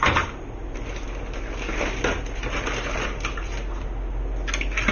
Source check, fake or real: real